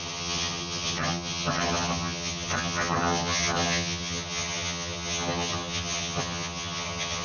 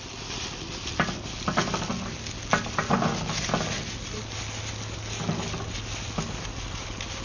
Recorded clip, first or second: second